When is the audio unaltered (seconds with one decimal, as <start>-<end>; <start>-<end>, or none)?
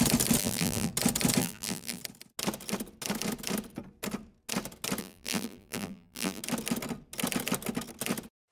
0.0-0.4; 0.9-1.4; 2.0-5.0; 6.4-8.5